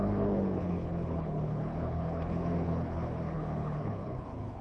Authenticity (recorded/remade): remade